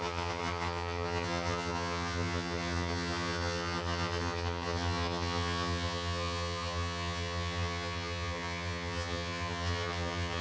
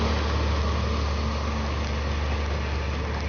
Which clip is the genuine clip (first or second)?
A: second